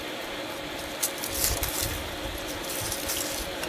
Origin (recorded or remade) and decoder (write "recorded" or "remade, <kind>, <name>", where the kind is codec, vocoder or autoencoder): remade, vocoder, BigVGAN v2